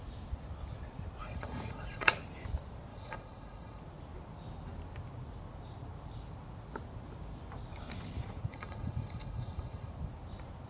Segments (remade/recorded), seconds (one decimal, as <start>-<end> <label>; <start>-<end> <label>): 0.0-1.2 recorded; 1.2-2.1 remade; 2.1-2.9 recorded; 2.9-3.8 remade; 3.8-8.5 recorded; 8.5-9.9 remade; 9.9-10.7 recorded